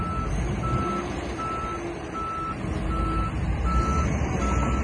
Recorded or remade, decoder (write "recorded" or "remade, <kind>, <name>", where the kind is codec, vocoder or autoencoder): recorded